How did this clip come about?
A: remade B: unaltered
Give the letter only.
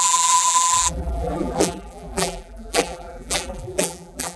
A